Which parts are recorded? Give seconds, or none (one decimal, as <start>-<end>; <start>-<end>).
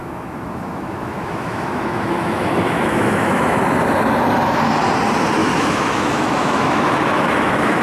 3.6-5.4